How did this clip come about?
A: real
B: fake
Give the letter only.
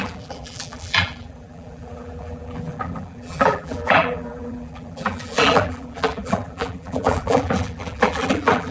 B